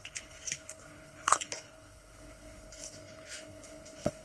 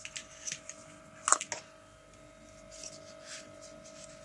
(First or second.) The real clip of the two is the second